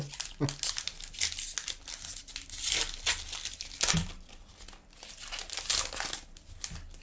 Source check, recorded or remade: recorded